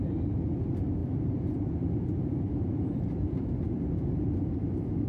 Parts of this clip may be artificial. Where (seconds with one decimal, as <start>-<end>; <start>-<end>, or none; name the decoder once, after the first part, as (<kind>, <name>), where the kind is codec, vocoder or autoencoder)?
1.0-4.1 (vocoder, BigVGAN v2)